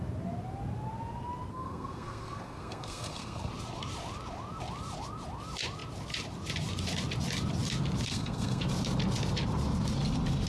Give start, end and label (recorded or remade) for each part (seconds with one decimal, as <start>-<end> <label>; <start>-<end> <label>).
0.0-1.5 recorded; 1.5-3.5 remade; 3.5-8.1 recorded; 8.1-8.6 remade; 8.6-10.5 recorded